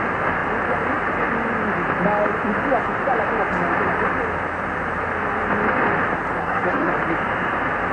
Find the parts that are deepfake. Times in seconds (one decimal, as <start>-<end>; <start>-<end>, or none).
6.4-6.9